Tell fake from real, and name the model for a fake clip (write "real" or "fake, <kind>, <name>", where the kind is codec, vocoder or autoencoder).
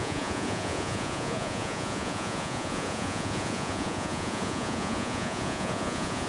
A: fake, vocoder, Vocos